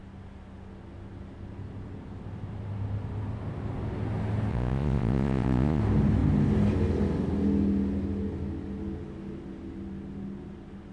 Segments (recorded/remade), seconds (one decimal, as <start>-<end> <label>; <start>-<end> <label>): 0.0-4.5 recorded; 4.5-5.8 remade; 5.8-10.9 recorded